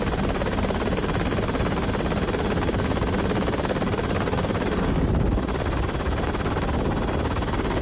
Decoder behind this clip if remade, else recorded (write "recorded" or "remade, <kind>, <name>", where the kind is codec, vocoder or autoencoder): recorded